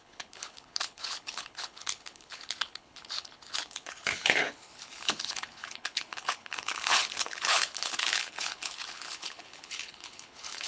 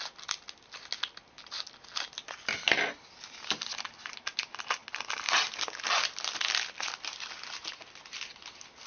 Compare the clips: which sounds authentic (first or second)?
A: second